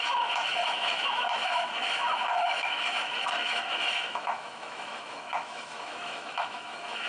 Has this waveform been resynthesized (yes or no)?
yes